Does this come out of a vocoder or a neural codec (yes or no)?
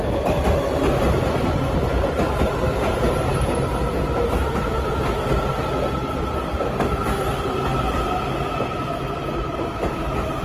no